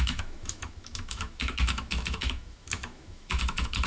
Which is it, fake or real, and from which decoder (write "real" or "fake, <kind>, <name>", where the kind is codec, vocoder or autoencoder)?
fake, autoencoder, DAC-VAE